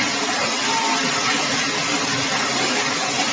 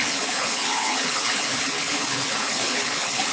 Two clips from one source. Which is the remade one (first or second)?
second